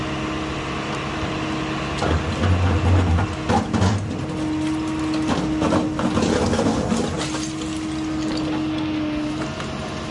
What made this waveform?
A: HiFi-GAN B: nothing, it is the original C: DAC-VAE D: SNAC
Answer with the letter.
B